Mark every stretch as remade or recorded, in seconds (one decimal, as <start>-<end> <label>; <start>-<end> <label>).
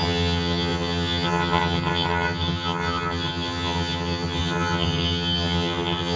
0.0-6.2 remade